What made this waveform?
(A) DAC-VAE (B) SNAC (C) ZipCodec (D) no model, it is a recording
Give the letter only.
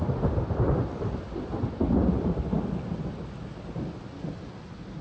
D